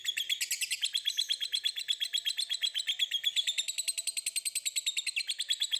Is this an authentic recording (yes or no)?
yes